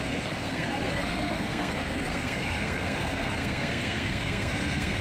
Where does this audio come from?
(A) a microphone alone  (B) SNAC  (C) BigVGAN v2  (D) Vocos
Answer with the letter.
B